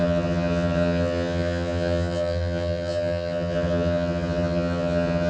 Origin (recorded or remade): remade